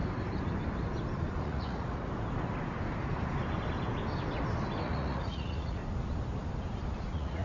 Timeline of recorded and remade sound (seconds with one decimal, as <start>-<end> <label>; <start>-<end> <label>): 0.0-1.4 recorded; 1.4-2.0 remade; 2.0-4.8 recorded; 4.8-5.8 remade; 5.8-7.0 recorded; 7.0-7.4 remade